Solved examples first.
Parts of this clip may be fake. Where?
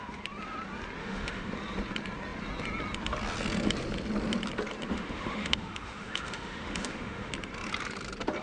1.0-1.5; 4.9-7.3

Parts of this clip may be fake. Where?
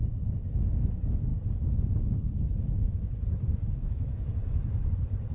3.5-4.3